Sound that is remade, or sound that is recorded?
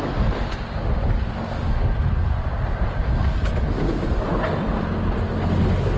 recorded